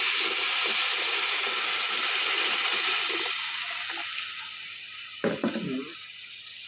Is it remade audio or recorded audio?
recorded